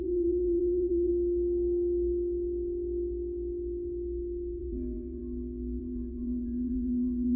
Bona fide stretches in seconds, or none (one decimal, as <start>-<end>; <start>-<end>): 1.1-4.6; 5.2-5.8